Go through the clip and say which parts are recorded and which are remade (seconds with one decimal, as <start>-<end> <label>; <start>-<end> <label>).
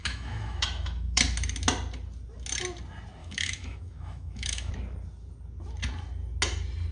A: 0.0-1.2 remade; 1.2-3.2 recorded; 3.2-4.7 remade; 4.7-6.9 recorded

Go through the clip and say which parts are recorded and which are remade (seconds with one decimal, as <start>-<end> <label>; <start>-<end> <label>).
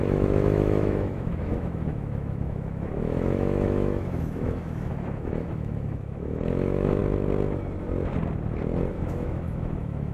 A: 0.0-7.0 remade; 7.0-8.9 recorded; 8.9-10.1 remade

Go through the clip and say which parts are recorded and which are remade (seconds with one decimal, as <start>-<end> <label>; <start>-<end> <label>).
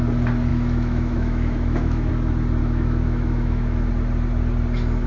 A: 0.0-0.5 recorded; 0.5-2.1 remade; 2.1-2.6 recorded; 2.6-3.9 remade; 3.9-5.1 recorded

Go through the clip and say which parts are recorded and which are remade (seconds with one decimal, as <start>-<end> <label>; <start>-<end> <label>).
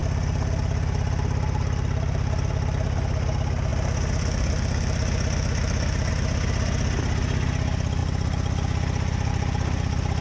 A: 0.0-10.2 recorded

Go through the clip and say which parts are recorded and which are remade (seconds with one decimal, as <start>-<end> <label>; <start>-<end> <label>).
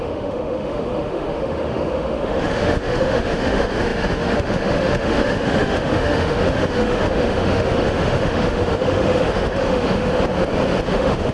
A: 0.0-10.1 remade; 10.1-10.9 recorded; 10.9-11.3 remade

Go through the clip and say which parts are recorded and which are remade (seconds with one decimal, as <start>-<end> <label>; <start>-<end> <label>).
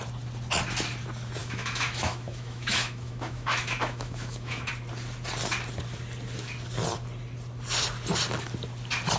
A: 0.0-1.4 recorded; 1.4-4.7 remade; 4.7-9.2 recorded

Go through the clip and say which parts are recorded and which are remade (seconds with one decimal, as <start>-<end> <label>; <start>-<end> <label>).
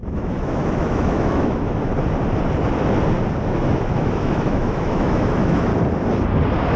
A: 0.0-1.9 remade; 1.9-3.4 recorded; 3.4-5.7 remade; 5.7-6.8 recorded